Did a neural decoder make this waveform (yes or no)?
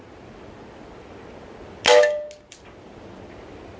no